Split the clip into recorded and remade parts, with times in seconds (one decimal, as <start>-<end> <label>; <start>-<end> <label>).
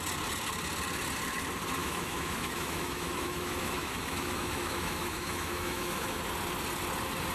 0.0-1.8 recorded; 1.8-6.2 remade; 6.2-7.3 recorded